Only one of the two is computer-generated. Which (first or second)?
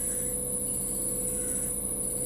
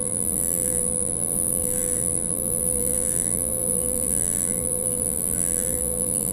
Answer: second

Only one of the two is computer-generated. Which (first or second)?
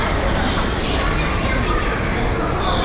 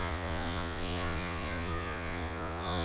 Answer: second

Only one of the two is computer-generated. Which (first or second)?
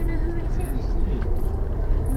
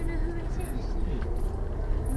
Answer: first